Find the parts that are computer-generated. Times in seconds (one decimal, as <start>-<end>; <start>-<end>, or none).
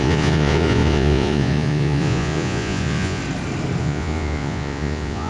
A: 0.0-3.2; 3.8-5.3